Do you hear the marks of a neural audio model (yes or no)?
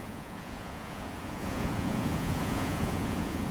yes